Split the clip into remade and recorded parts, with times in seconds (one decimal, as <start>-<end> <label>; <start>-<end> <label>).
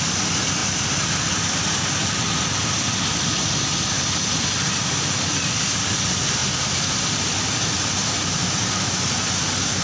0.0-6.4 recorded; 6.4-8.6 remade; 8.6-9.8 recorded